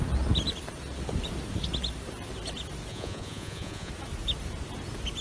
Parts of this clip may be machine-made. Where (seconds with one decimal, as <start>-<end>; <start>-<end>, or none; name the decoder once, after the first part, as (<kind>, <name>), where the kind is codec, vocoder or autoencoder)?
2.9-3.9 (vocoder, Vocos)